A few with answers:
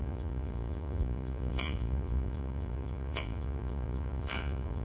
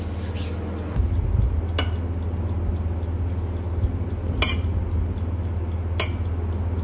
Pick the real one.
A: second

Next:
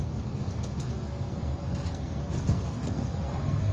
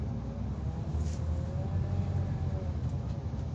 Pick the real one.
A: second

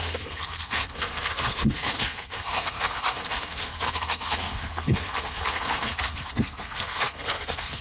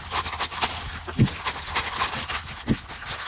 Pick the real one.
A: second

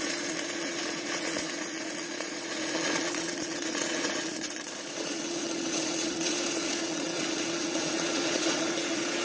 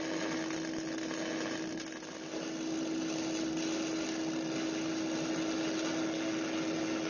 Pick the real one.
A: second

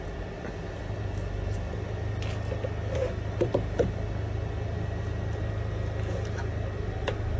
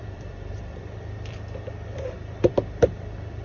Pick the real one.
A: first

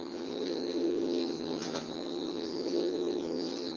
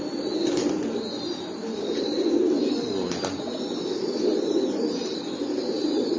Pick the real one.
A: second